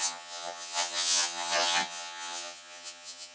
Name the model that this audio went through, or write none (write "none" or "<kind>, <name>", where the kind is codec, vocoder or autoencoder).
vocoder, HiFi-GAN